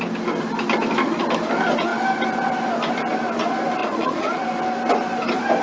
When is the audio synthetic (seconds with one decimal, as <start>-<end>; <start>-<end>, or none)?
3.8-4.4